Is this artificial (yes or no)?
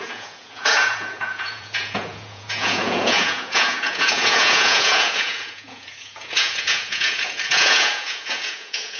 yes